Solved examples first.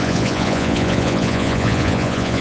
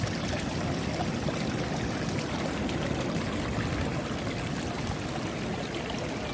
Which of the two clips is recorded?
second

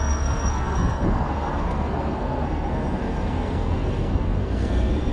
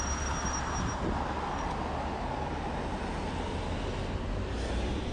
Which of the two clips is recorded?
second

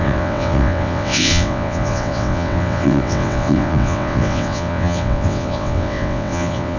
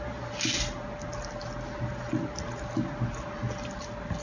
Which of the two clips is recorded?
second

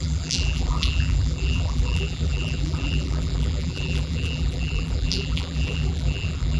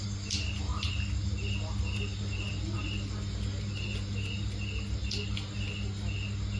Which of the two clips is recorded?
second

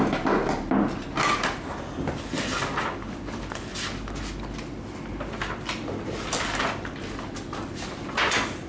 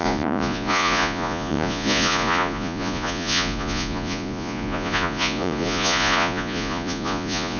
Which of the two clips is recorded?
first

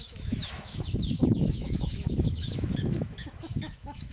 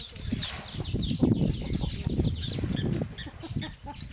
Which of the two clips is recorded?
second